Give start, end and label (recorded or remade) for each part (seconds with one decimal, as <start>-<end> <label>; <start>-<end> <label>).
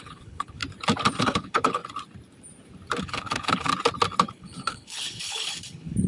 0.0-0.6 remade; 0.6-1.2 recorded; 1.2-1.8 remade; 1.8-3.0 recorded; 3.0-3.7 remade; 3.7-4.3 recorded; 4.3-6.1 remade